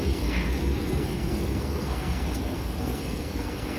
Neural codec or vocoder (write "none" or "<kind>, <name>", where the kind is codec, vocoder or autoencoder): codec, SNAC